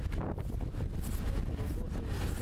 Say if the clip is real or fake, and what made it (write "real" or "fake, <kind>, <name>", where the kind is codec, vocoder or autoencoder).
real